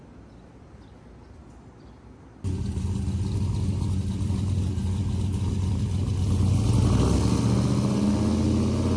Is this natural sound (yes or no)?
yes